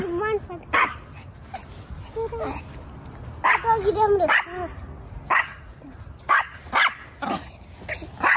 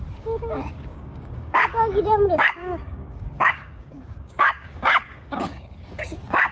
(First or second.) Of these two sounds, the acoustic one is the first